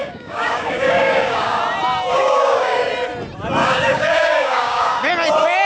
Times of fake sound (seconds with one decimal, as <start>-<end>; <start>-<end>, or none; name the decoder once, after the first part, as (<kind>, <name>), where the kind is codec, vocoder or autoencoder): 0.0-1.6 (codec, DAC); 2.1-2.9; 3.6-5.1